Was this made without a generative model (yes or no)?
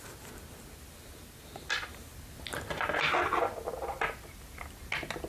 yes